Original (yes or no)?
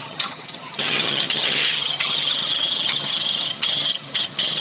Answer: no